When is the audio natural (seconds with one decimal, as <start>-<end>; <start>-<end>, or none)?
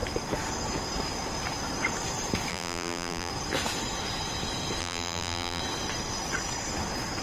0.0-2.5; 3.3-4.8; 5.6-7.2